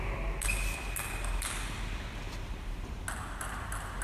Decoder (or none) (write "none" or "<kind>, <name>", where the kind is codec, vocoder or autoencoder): none